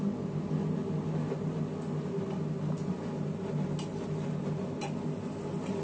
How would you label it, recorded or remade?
recorded